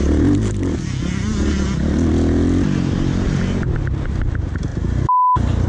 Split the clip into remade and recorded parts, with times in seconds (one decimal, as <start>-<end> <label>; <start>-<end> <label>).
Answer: 0.0-5.7 recorded